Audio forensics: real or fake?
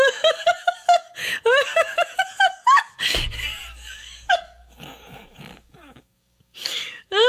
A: fake